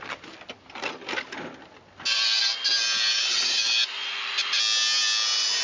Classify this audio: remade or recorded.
recorded